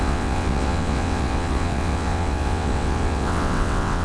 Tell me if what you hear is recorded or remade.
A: remade